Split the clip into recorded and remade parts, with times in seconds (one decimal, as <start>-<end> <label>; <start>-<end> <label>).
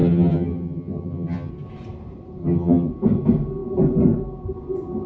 0.0-1.5 remade; 1.5-2.4 recorded; 2.4-2.9 remade; 2.9-5.1 recorded